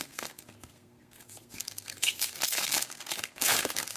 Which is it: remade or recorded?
remade